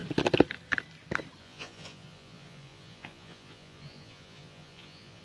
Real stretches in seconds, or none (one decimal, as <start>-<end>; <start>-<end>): 0.0-1.4